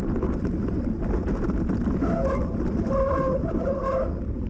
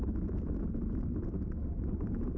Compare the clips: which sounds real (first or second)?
second